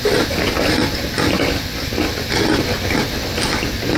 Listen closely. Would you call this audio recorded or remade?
recorded